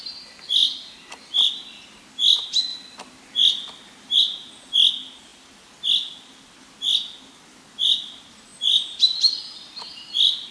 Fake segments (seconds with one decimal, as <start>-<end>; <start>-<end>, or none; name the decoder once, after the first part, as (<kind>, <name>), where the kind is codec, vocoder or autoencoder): 8.5-10.5 (vocoder, BigVGAN v2)